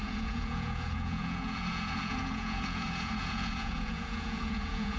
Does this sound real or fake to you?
fake